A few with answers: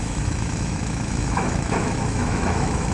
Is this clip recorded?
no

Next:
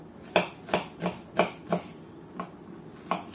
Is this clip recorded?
yes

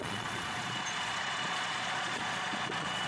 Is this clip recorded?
no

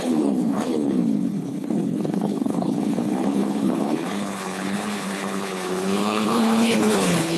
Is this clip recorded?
no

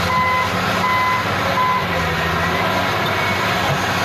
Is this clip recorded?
yes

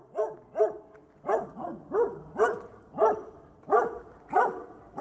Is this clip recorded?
yes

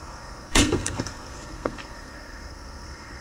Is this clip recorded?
no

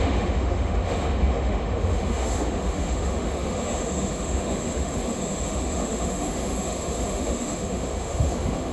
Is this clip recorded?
no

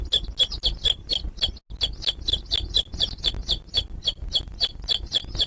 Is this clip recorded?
yes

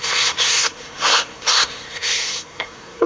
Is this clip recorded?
no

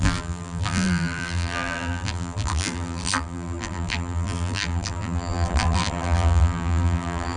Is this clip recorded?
no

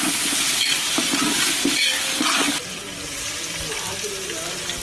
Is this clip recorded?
no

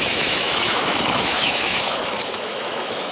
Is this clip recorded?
no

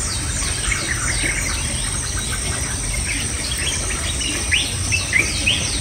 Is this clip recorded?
yes